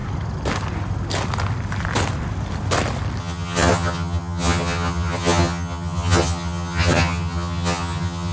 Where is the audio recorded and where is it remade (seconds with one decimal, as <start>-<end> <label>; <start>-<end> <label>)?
0.0-3.2 recorded; 3.2-8.3 remade